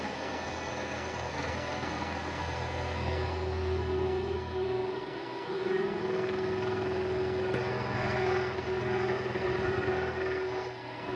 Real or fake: fake